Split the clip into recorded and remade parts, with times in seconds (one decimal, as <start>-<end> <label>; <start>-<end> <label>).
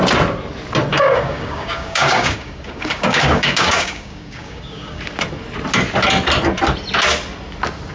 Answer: 0.0-0.9 recorded; 0.9-5.0 remade; 5.0-7.9 recorded